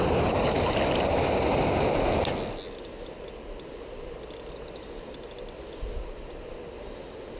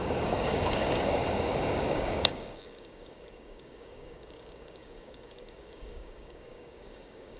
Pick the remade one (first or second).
second